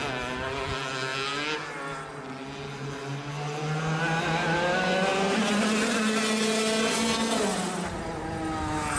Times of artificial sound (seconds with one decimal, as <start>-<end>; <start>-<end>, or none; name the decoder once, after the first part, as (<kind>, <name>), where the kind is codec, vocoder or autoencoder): none